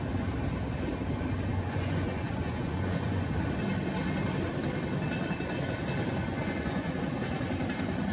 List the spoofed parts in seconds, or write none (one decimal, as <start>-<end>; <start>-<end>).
1.5-3.3; 6.2-7.0